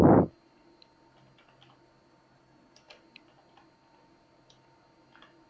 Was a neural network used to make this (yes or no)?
no